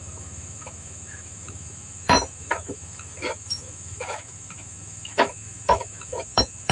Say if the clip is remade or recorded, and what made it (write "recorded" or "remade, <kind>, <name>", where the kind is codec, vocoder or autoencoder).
remade, autoencoder, DAC-VAE